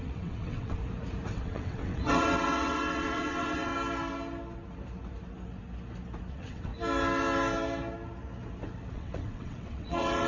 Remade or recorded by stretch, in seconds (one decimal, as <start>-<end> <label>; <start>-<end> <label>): 0.0-0.8 remade; 0.8-1.3 recorded; 1.3-3.7 remade; 3.7-6.3 recorded; 6.3-6.7 remade; 6.7-8.9 recorded; 8.9-10.3 remade